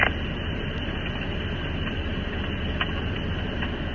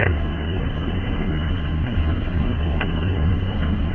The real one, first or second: first